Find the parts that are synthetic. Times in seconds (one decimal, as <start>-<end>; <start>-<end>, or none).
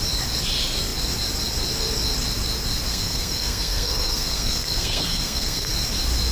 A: 2.9-5.7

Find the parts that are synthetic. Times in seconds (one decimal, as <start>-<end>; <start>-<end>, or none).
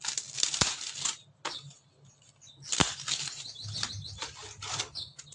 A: none